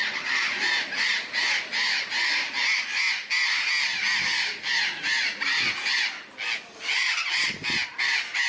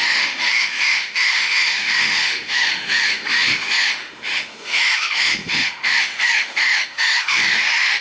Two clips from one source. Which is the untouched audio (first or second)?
first